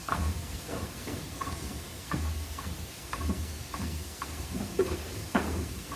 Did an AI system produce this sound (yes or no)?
yes